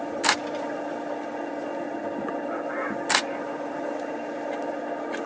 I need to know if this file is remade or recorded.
recorded